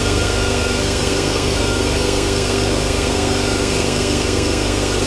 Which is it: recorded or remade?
remade